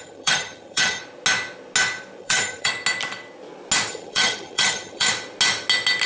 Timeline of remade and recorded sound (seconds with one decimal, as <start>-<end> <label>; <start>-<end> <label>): 0.0-1.0 remade; 1.0-2.2 recorded; 2.2-2.7 remade; 2.7-3.9 recorded; 3.9-5.1 remade; 5.1-6.1 recorded